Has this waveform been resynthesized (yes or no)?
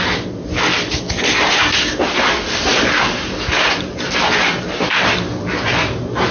no